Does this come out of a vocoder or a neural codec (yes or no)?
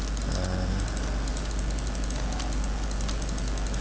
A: no